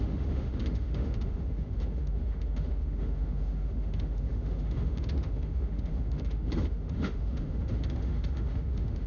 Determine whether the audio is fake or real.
fake